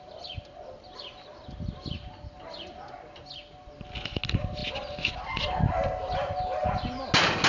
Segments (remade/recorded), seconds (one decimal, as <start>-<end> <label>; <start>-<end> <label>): 0.0-7.5 recorded